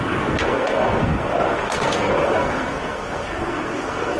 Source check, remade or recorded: remade